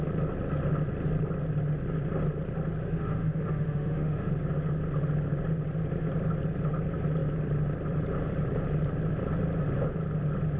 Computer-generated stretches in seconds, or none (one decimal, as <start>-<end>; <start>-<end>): 2.8-4.3